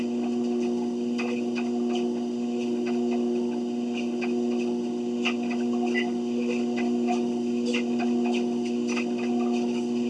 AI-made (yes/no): no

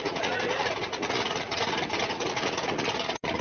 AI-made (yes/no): yes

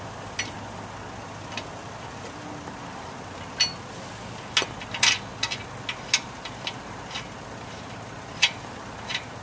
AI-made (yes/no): no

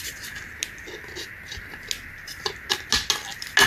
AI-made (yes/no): no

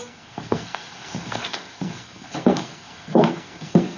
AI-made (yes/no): yes